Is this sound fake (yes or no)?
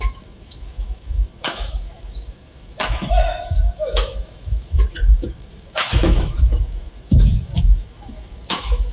yes